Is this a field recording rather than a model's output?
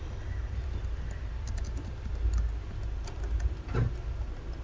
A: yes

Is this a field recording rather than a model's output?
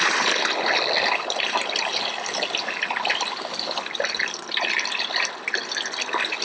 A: yes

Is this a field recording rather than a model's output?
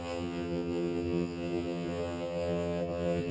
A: no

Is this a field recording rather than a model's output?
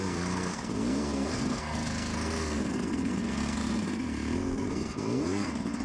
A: no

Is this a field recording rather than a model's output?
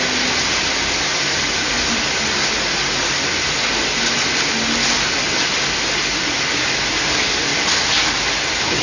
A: yes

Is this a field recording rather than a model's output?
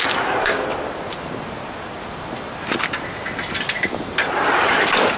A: yes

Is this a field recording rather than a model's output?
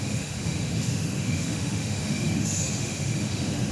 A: no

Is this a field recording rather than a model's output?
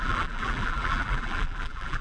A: no